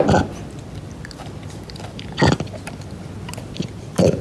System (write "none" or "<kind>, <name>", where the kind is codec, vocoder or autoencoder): none